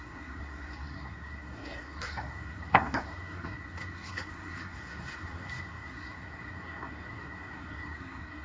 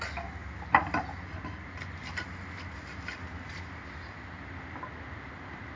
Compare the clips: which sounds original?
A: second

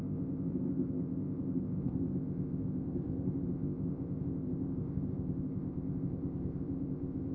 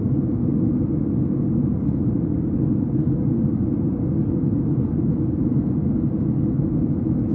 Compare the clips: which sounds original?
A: second